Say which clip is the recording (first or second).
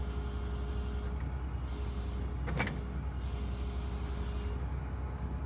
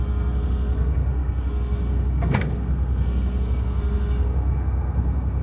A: first